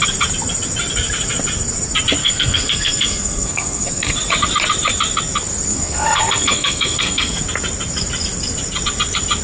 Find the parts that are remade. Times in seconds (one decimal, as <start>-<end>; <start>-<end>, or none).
2.2-4.1; 5.7-7.4